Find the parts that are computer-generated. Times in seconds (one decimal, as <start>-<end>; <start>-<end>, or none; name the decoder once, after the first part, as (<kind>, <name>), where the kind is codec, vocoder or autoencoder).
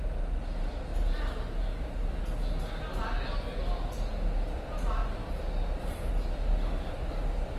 none